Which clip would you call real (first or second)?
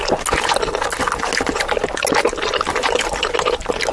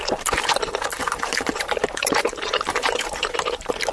first